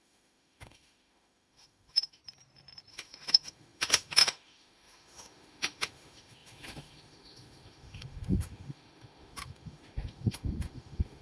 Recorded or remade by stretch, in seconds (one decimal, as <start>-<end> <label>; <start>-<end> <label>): 0.0-2.2 remade; 2.2-2.9 recorded; 2.9-11.2 remade